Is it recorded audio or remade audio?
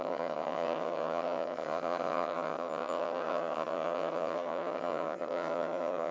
remade